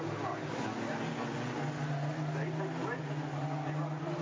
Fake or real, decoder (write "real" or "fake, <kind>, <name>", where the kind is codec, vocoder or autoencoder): real